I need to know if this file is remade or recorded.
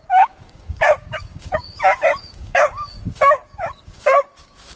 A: remade